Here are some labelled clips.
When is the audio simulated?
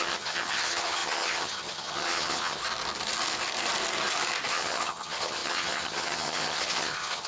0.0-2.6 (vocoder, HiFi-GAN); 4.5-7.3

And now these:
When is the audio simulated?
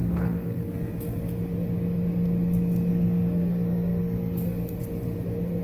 0.0-1.2 (codec, SNAC); 2.9-4.8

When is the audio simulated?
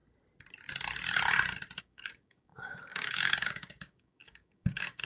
1.8-5.0 (codec, DAC)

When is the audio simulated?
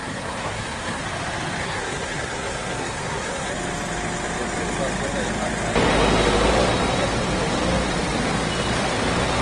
0.0-1.0 (codec, SNAC); 1.6-3.5